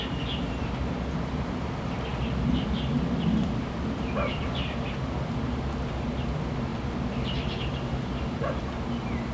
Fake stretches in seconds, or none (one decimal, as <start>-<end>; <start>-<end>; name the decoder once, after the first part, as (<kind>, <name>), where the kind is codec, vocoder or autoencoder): none